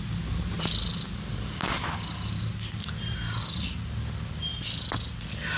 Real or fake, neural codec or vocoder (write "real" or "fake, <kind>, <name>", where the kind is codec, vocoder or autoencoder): real